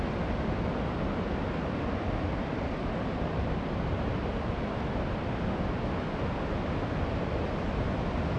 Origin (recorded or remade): recorded